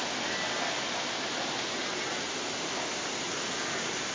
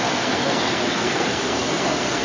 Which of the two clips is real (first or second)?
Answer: first